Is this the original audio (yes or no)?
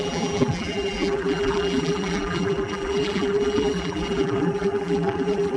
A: no